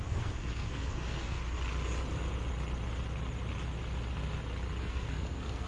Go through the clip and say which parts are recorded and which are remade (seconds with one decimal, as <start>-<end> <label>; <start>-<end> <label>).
0.0-1.4 remade; 1.4-4.8 recorded; 4.8-5.7 remade